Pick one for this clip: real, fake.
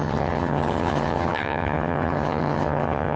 fake